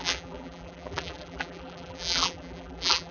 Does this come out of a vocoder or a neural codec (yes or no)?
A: yes